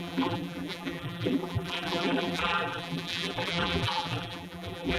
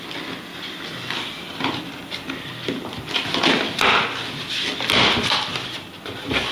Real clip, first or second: second